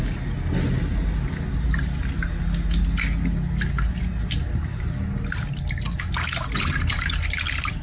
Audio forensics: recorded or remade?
recorded